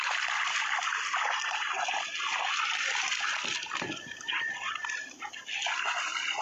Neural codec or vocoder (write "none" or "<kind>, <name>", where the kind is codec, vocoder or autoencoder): none